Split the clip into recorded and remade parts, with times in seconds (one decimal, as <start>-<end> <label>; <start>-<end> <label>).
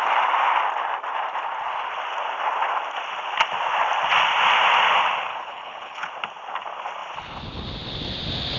0.0-5.3 recorded; 5.3-6.1 remade; 6.1-8.6 recorded